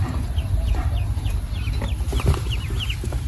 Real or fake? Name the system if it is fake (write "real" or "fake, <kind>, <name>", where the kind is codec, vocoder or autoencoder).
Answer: fake, vocoder, BigVGAN v2